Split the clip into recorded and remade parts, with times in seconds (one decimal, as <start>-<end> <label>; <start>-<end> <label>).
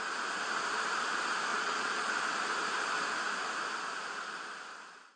0.0-1.5 recorded; 1.5-2.1 remade; 2.1-5.2 recorded